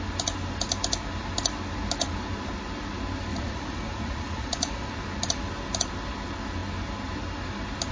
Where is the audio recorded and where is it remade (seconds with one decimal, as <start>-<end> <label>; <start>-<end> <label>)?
0.0-3.3 recorded; 3.3-4.9 remade; 4.9-7.9 recorded